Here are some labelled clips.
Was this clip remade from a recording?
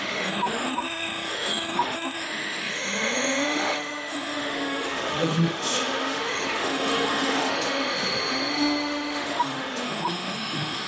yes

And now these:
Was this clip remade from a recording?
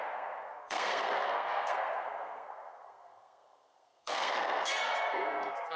yes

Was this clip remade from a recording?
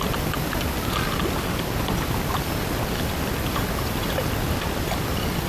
no